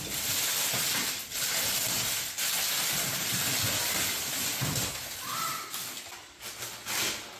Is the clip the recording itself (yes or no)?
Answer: yes